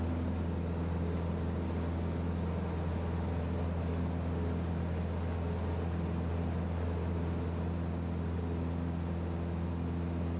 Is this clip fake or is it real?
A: real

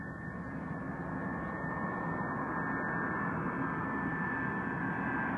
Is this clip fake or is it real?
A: real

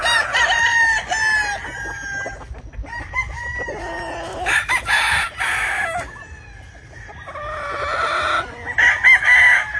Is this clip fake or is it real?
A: real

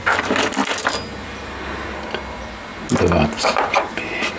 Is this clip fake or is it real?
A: real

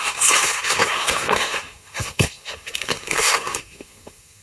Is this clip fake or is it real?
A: fake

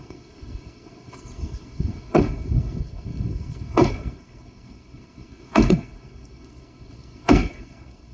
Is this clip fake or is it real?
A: fake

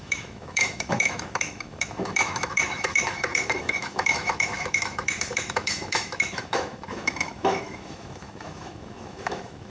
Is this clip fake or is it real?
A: fake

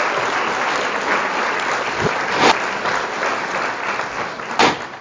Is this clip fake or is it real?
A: real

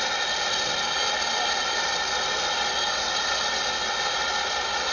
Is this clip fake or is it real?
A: real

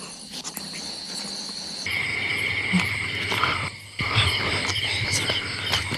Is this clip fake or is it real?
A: real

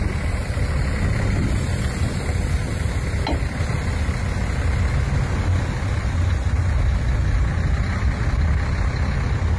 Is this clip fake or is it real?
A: real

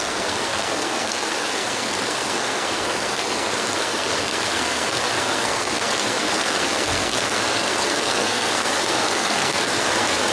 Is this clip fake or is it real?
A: fake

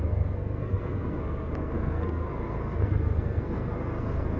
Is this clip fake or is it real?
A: fake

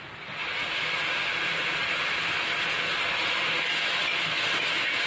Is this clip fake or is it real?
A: real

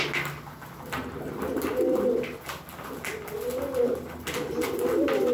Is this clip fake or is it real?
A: real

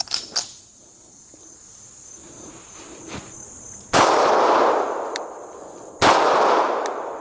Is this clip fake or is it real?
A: real